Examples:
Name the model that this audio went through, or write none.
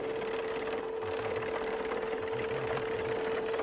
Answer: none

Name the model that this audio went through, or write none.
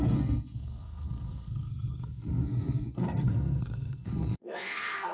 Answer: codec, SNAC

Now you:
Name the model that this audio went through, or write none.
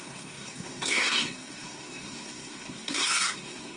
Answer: codec, SNAC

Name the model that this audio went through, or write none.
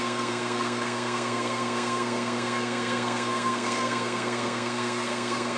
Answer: codec, SNAC